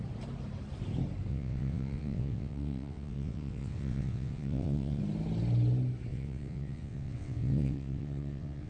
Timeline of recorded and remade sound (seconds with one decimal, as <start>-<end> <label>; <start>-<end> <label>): 0.0-1.3 recorded; 1.3-5.0 remade; 5.0-6.1 recorded; 6.1-8.7 remade